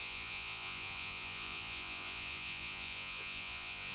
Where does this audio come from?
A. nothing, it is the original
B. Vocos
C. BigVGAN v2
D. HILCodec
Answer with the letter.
B